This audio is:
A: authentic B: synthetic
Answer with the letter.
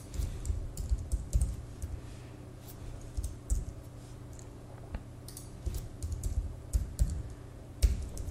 A